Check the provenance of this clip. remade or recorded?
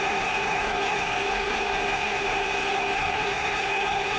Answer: remade